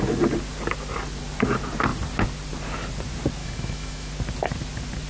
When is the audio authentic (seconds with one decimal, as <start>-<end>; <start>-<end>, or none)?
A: 0.0-3.4; 4.1-5.1